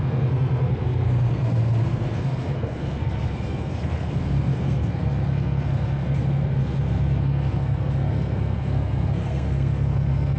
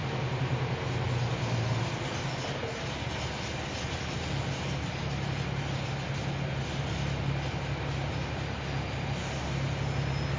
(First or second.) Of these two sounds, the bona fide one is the second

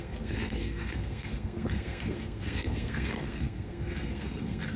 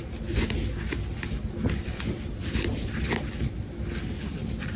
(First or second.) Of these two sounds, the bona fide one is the second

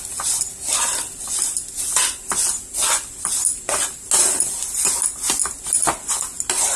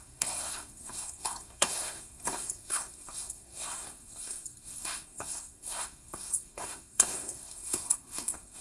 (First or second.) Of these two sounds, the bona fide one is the first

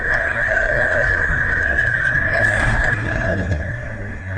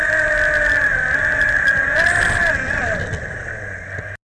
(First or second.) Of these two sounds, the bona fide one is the second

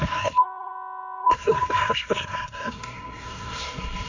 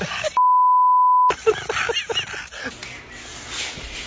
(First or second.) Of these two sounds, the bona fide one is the second